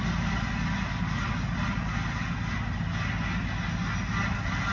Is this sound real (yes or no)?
yes